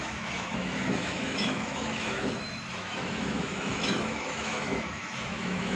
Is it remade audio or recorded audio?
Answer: remade